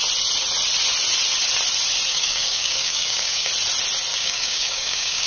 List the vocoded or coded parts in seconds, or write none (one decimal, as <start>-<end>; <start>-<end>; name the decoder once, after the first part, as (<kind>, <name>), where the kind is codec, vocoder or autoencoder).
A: 2.1-3.5 (codec, DAC); 4.1-5.3